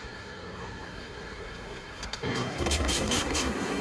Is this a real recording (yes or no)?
no